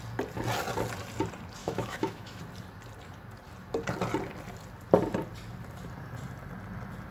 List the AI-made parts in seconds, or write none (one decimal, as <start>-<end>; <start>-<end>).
1.6-2.4